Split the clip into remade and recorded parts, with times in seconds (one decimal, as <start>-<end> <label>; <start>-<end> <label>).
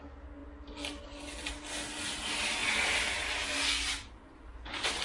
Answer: 0.0-5.0 recorded